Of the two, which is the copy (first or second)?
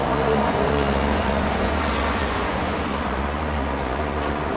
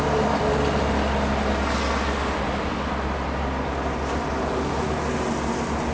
first